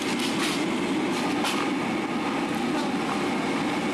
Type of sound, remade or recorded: recorded